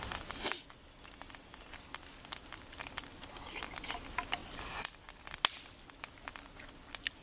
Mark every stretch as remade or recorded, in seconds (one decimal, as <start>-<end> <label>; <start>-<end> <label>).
0.0-7.2 recorded

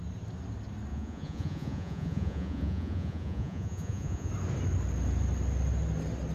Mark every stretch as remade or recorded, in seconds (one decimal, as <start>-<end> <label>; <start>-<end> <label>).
0.0-0.9 recorded; 0.9-4.3 remade; 4.3-6.3 recorded

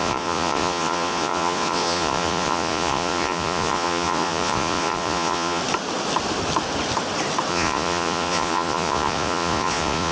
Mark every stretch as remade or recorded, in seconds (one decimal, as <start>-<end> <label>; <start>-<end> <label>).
0.0-5.6 remade; 5.6-7.5 recorded; 7.5-10.1 remade

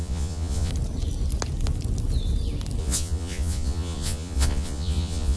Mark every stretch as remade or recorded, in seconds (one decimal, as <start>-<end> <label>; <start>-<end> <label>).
0.0-0.7 remade; 0.7-2.8 recorded; 2.8-5.4 remade